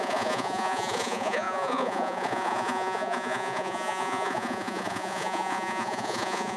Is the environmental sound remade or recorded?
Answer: remade